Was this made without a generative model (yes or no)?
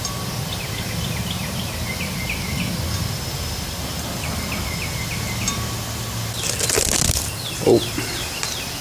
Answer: yes